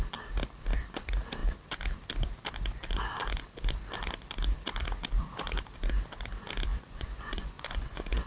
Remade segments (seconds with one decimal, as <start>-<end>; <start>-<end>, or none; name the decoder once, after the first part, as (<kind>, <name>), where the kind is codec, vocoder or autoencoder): 6.7-8.3 (vocoder, Vocos)